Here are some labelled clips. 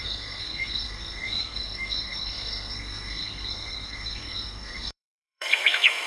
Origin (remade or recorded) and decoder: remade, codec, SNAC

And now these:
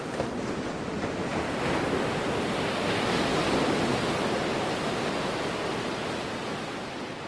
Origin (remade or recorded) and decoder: recorded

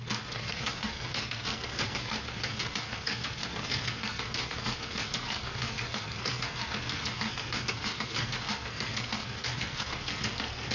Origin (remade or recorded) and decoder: remade, codec, SNAC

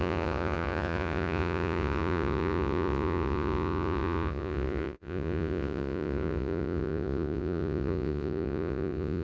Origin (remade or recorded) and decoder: remade, vocoder, Vocos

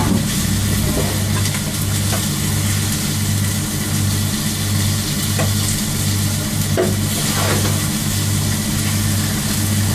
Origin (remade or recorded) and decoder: recorded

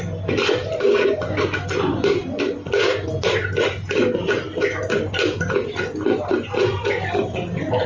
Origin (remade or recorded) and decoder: recorded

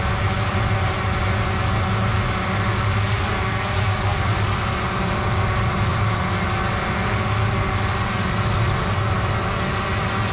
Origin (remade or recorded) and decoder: recorded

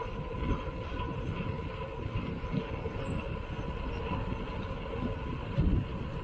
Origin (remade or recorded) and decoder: recorded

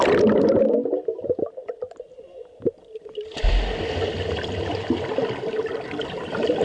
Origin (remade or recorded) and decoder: recorded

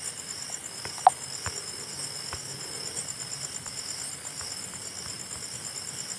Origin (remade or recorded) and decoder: recorded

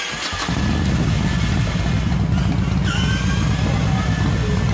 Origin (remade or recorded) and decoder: recorded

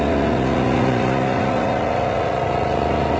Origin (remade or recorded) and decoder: remade, vocoder, Vocos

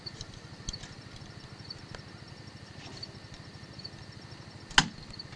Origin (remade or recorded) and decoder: recorded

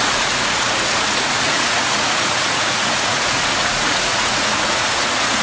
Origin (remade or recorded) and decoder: remade, vocoder, Vocos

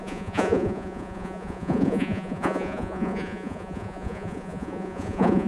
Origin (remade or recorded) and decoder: remade, vocoder, Vocos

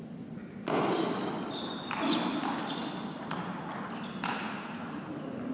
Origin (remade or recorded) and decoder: recorded